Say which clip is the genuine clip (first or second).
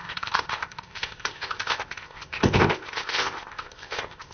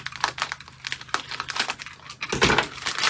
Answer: second